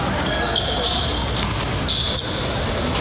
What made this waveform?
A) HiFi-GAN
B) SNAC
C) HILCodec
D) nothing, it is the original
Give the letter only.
D